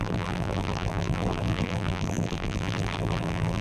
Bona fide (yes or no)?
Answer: no